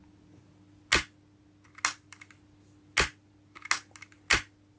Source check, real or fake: real